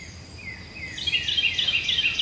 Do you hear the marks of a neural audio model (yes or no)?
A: no